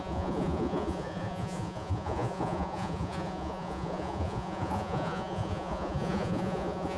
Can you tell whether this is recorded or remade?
remade